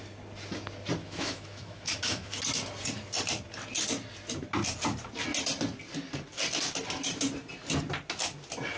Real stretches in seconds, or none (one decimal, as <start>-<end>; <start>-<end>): 0.0-1.0; 2.4-8.8